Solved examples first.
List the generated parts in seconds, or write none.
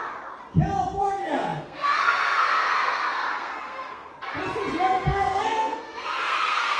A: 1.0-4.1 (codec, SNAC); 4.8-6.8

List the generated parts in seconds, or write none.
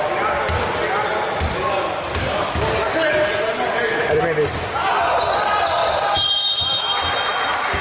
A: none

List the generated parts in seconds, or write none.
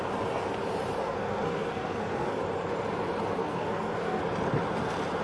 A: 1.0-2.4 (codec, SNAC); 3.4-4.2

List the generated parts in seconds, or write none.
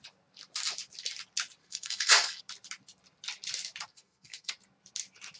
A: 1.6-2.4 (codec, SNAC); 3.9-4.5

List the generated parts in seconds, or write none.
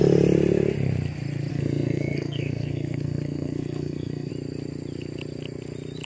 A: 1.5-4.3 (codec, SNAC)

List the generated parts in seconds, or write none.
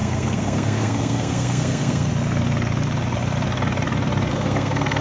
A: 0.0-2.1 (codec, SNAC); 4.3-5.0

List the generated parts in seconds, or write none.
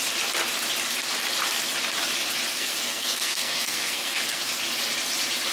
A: 2.5-4.4 (codec, SNAC)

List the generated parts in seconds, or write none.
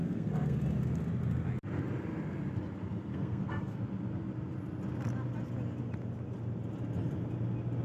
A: 0.0-0.6 (codec, SNAC); 3.1-3.8